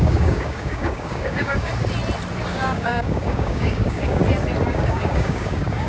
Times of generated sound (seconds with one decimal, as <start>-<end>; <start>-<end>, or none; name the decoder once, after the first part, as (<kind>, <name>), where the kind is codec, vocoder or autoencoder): 0.0-1.7 (codec, DAC); 2.5-4.2; 4.7-5.9

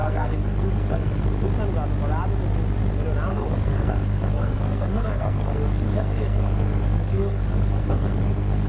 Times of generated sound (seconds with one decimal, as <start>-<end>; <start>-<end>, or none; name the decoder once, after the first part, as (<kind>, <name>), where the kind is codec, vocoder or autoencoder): 0.0-1.5 (codec, SNAC); 3.3-8.7

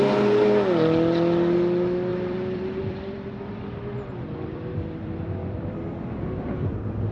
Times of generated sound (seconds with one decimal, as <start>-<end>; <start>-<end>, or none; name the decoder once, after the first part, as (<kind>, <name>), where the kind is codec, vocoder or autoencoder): 2.1-5.6 (vocoder, BigVGAN v2)

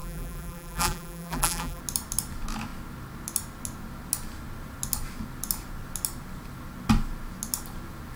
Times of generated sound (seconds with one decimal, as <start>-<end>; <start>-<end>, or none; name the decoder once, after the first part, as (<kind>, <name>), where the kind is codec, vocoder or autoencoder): 0.0-1.8 (vocoder, BigVGAN v2)

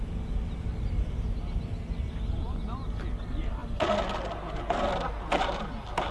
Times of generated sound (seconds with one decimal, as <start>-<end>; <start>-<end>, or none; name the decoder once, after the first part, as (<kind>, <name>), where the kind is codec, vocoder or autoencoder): none

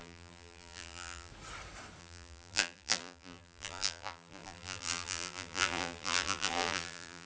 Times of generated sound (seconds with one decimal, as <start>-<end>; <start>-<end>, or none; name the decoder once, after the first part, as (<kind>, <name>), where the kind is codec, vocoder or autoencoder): 0.0-1.3 (vocoder, BigVGAN v2); 2.0-7.3

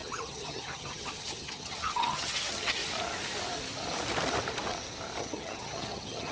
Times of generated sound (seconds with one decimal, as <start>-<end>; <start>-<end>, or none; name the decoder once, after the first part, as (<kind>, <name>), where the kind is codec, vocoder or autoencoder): 0.0-2.8 (vocoder, HiFi-GAN); 5.2-6.3